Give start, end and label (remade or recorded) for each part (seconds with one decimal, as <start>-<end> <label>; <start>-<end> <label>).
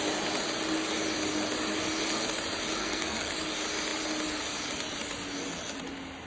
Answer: 0.0-2.8 recorded; 2.8-3.3 remade; 3.3-6.3 recorded